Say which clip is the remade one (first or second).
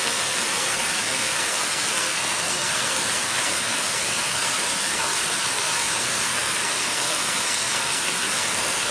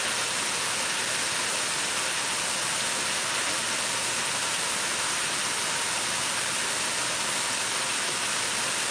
first